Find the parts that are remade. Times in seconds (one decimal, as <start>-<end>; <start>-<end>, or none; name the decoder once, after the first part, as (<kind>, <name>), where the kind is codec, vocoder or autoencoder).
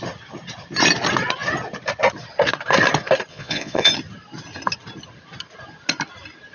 3.3-3.9 (vocoder, Vocos)